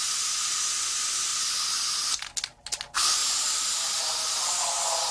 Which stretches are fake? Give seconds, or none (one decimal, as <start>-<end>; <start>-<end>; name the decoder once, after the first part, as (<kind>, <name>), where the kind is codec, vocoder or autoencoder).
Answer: none